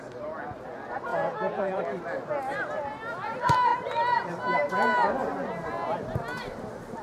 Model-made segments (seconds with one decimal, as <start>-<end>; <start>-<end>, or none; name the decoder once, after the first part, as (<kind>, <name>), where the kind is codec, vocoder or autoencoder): 1.1-1.8 (vocoder, Vocos)